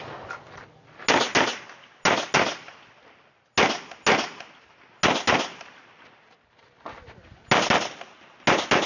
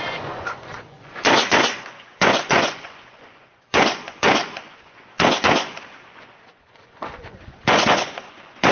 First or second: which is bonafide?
first